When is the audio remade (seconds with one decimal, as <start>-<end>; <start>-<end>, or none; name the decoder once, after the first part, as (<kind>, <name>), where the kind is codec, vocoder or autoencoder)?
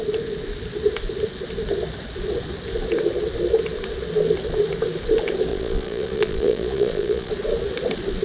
5.5-7.3 (vocoder, Vocos)